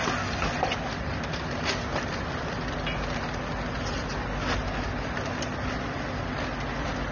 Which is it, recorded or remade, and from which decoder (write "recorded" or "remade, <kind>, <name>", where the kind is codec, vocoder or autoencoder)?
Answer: recorded